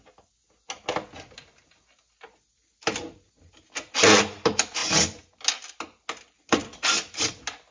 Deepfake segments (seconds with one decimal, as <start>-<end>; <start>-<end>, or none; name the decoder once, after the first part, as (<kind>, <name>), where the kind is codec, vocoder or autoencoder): none